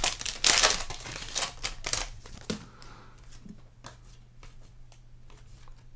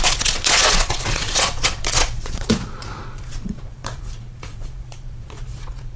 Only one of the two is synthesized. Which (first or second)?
second